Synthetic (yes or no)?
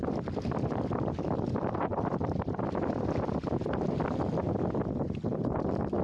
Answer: no